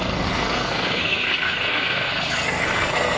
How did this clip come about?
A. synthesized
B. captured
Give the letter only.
A